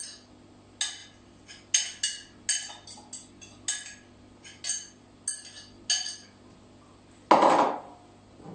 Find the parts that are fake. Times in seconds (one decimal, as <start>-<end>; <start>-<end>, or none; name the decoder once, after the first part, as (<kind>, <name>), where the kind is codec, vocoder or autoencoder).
none